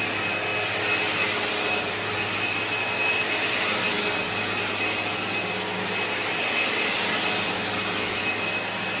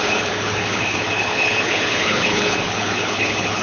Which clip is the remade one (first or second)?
second